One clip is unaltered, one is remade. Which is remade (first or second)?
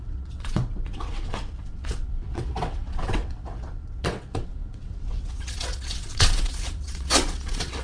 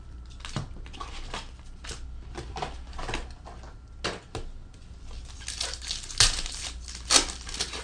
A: first